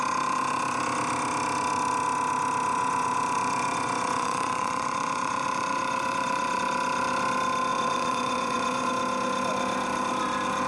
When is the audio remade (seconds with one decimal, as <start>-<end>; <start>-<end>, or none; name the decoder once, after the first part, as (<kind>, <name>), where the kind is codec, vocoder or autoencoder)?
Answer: 2.7-6.6 (vocoder, Vocos); 7.7-8.9